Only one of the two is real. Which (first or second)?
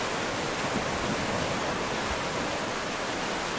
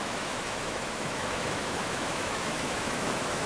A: first